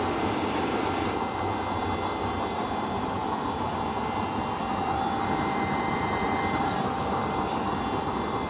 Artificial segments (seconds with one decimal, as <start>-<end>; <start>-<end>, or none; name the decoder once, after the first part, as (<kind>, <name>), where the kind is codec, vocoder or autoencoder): 0.0-8.5 (vocoder, BigVGAN v2)